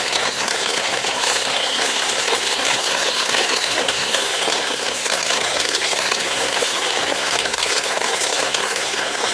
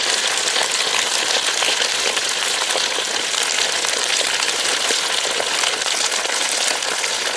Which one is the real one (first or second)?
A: second